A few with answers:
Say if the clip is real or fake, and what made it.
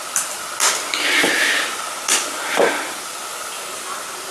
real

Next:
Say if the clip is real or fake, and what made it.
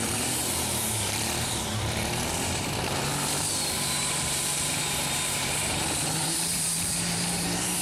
fake, vocoder, BigVGAN v2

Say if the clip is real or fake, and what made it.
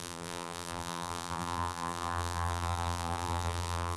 fake, vocoder, BigVGAN v2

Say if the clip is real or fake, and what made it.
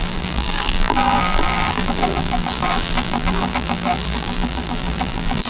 fake, vocoder, BigVGAN v2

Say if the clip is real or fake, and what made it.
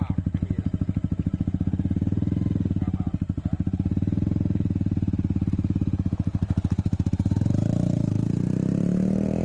fake, vocoder, BigVGAN v2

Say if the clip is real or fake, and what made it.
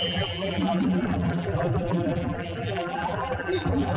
fake, vocoder, BigVGAN v2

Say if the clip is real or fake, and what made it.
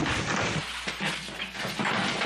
real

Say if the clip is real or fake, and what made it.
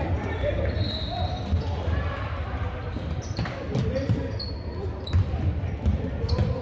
fake, vocoder, BigVGAN v2